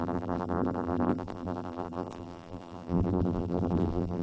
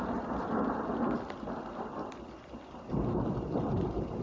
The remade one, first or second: first